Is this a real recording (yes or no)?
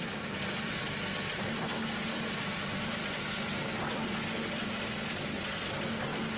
yes